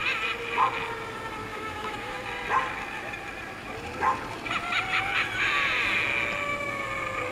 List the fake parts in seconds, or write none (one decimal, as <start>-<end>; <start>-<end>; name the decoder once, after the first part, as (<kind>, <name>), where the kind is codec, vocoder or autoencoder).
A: 1.5-2.2 (autoencoder, DAC-VAE)